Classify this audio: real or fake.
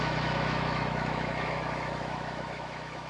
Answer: fake